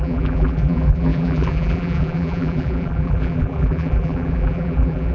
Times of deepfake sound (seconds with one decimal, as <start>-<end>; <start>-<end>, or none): 0.0-5.1